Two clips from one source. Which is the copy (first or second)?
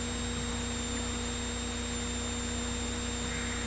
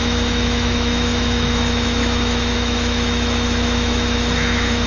second